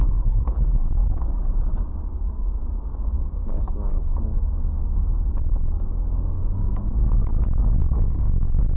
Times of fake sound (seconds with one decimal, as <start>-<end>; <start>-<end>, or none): 0.0-1.0; 1.8-6.6; 7.8-8.8